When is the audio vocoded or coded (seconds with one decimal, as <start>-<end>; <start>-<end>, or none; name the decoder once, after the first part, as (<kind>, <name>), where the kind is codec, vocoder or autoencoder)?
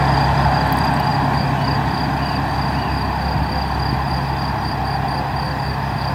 none